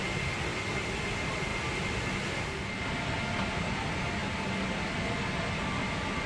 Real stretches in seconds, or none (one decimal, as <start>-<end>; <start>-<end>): 0.0-6.3

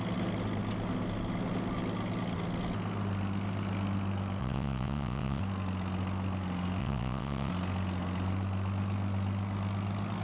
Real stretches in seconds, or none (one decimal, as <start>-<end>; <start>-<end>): 0.0-4.4; 5.4-6.8; 7.5-10.2

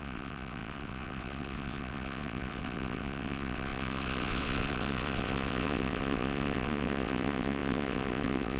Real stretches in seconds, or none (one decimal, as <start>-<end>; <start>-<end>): none

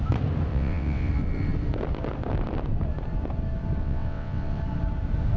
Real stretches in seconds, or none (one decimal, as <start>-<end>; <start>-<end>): 0.0-0.5; 1.1-3.8; 4.6-5.4

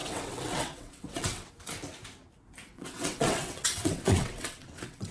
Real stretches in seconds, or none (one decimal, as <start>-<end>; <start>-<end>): 1.5-2.7

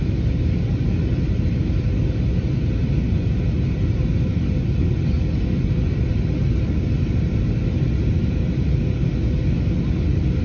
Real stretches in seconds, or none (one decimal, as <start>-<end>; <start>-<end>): 0.0-10.4

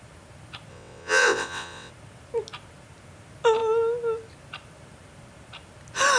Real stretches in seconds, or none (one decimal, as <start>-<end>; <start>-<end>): 0.0-0.7; 1.9-6.2

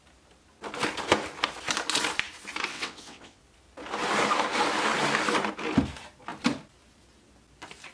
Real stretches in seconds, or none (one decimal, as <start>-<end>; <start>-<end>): 0.0-2.7; 3.4-7.9